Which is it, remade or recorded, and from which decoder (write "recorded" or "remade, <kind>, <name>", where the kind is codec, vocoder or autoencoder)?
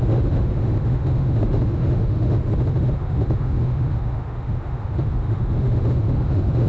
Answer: remade, autoencoder, DAC-VAE